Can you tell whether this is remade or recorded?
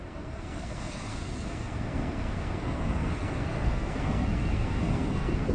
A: remade